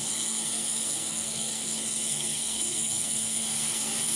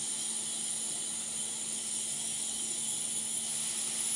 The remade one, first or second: first